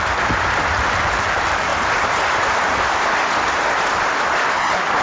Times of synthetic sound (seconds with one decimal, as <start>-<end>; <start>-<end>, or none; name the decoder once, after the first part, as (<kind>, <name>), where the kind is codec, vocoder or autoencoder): 0.0-1.7 (vocoder, BigVGAN v2)